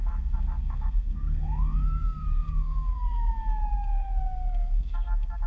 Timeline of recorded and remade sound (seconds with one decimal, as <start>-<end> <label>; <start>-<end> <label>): 0.0-3.3 remade; 3.3-3.9 recorded; 3.9-5.5 remade